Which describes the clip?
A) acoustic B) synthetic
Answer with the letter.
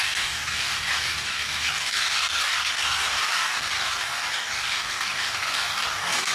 B